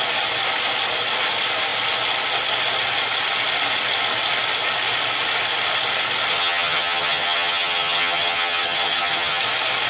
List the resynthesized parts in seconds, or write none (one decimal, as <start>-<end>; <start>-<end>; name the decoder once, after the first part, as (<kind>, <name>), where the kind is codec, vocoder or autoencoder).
6.3-9.4 (vocoder, HiFi-GAN)

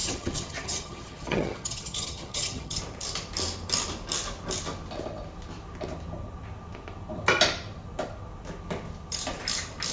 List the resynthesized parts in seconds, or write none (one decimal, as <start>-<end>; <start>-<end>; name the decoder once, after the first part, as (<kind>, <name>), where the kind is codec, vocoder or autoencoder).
0.0-2.8 (vocoder, HiFi-GAN)

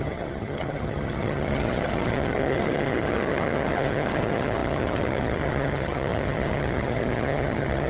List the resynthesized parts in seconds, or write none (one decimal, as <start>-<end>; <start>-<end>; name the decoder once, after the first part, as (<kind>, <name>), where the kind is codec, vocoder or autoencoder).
0.0-7.9 (vocoder, HiFi-GAN)

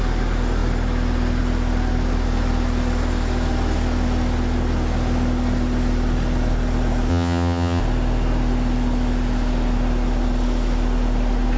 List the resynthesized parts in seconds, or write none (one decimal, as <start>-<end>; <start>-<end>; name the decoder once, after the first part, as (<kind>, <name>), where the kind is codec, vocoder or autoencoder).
7.1-7.8 (vocoder, HiFi-GAN)

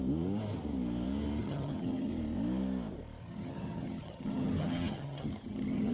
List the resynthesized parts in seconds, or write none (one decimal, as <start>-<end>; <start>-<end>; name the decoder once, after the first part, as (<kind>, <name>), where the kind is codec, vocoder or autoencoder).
1.4-2.1 (vocoder, HiFi-GAN); 3.2-5.9

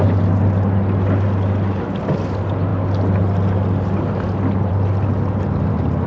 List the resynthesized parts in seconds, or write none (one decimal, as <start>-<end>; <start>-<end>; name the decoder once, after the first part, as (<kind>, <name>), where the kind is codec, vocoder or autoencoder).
none

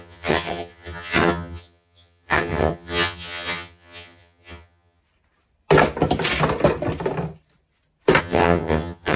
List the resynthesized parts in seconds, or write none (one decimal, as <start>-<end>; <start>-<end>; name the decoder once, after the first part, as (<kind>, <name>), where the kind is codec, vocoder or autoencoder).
0.0-5.0 (vocoder, HiFi-GAN); 8.2-9.2